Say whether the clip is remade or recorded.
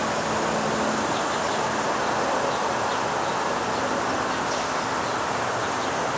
recorded